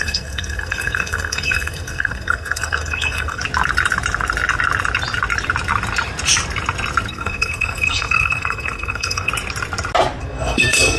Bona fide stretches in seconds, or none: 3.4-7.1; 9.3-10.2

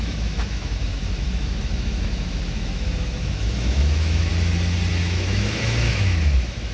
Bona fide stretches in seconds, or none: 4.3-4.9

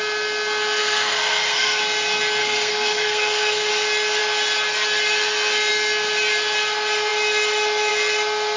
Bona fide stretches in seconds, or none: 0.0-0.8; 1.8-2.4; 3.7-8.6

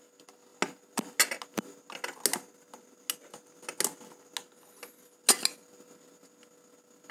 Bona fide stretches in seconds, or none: 0.0-7.1

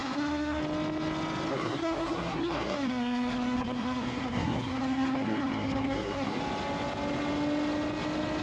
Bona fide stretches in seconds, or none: 0.6-1.5; 6.4-8.4

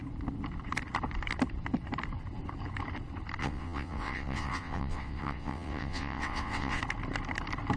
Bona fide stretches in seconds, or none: 0.0-3.4; 6.8-7.8